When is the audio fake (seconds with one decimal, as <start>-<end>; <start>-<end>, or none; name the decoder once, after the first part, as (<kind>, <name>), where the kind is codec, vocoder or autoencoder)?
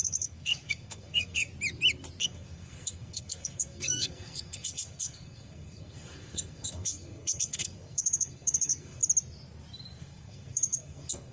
0.0-1.5 (codec, SNAC); 2.2-9.0; 10.0-11.3